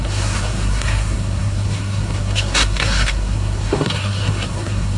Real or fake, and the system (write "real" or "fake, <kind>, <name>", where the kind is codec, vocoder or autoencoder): fake, codec, SNAC